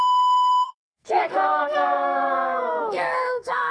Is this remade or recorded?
remade